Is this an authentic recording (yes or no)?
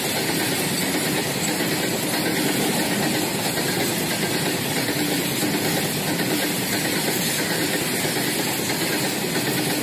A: yes